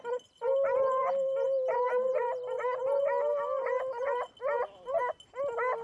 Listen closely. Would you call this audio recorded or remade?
recorded